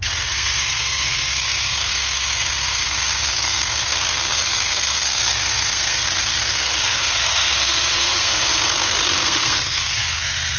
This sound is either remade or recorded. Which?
remade